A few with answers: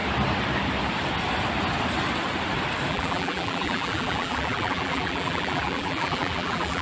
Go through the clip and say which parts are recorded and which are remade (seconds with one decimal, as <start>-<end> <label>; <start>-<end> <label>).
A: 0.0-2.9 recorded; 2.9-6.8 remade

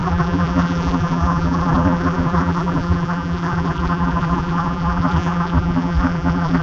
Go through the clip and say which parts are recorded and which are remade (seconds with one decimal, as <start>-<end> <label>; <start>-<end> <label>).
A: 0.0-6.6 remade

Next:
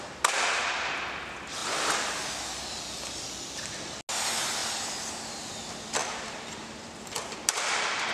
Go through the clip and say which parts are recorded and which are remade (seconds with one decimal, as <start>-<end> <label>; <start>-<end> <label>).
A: 0.0-1.6 recorded; 1.6-2.2 remade; 2.2-6.0 recorded; 6.0-8.1 remade